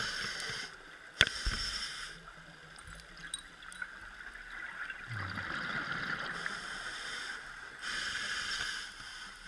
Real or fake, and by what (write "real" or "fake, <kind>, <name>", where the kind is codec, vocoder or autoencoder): real